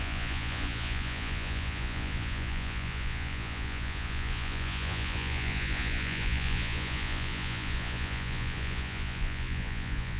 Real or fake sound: fake